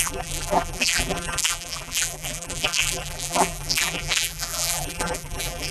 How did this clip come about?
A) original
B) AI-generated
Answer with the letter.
B